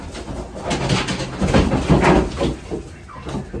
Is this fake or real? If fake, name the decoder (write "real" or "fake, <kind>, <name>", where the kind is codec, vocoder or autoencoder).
real